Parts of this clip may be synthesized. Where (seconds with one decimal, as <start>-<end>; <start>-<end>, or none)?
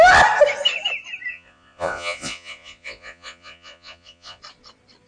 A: 1.3-4.4